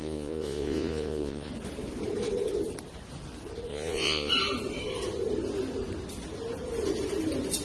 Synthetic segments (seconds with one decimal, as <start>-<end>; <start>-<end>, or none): 0.0-1.5; 3.7-4.3